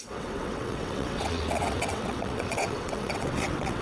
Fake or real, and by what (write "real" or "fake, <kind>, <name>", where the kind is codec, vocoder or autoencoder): fake, vocoder, WaveNeXt